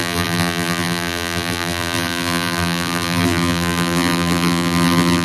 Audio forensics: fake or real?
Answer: fake